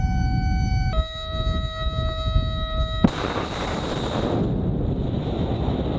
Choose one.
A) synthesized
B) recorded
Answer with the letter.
B